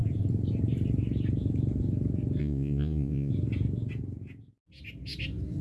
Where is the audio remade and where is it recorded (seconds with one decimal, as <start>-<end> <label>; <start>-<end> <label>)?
0.0-2.4 recorded; 2.4-3.3 remade; 3.3-5.6 recorded